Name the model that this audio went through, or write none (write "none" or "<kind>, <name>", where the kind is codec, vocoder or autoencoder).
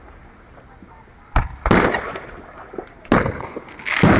none